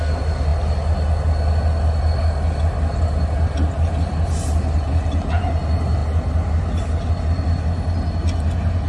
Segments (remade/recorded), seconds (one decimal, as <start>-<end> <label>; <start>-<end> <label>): 0.0-8.9 recorded